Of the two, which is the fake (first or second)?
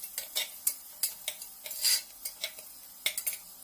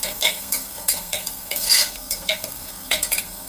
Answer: second